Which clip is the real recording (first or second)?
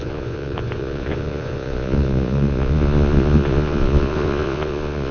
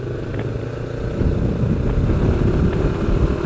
second